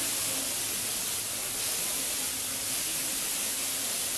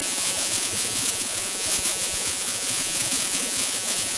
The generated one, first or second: second